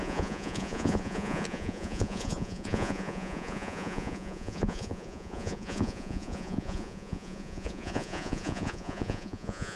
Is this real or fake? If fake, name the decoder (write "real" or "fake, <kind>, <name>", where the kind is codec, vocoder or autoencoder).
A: fake, vocoder, Vocos